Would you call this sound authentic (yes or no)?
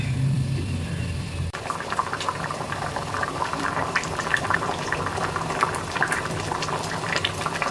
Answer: no